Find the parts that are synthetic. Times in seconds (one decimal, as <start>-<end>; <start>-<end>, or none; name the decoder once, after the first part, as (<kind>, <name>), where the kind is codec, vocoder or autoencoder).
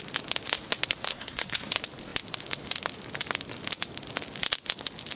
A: 1.1-1.7 (codec, SNAC)